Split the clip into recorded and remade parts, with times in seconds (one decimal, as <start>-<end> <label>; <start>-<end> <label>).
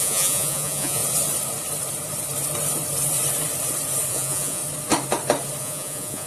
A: 0.0-1.0 remade; 1.0-4.1 recorded; 4.1-4.6 remade; 4.6-5.6 recorded; 5.6-6.3 remade